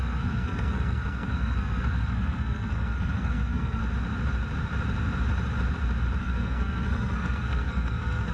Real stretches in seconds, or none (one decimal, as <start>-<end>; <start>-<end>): 3.8-6.2